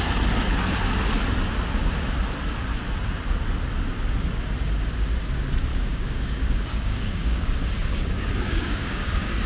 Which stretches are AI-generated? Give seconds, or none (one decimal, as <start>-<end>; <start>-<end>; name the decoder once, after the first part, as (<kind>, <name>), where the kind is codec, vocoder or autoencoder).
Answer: 5.7-9.5 (codec, DAC)